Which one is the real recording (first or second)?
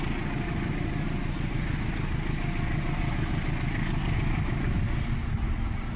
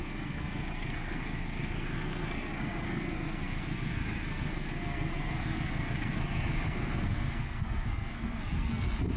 first